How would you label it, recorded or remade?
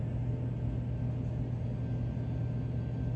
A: recorded